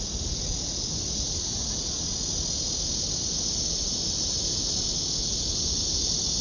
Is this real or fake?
real